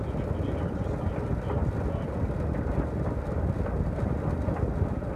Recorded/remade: recorded